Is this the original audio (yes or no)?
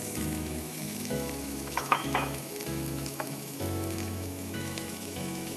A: no